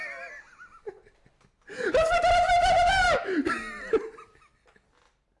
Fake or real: real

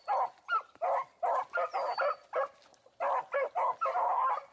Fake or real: real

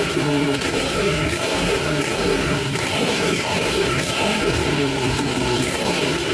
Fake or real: fake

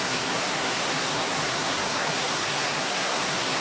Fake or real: fake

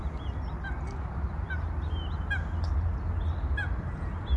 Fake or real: real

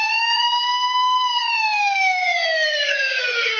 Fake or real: fake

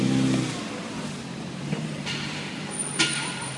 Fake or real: real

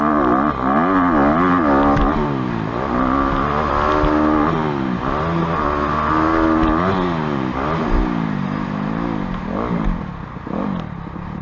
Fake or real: real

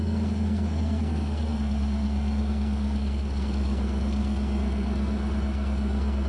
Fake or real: fake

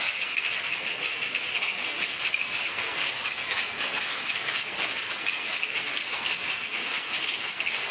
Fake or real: fake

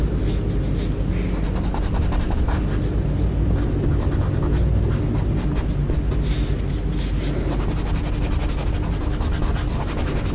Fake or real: real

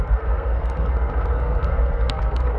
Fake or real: fake